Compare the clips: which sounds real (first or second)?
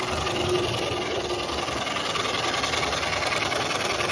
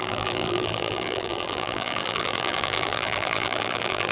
first